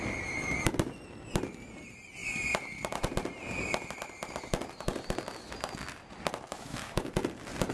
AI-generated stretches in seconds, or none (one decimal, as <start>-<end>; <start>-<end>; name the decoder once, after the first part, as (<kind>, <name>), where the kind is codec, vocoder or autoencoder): 6.5-7.1 (autoencoder, DAC-VAE)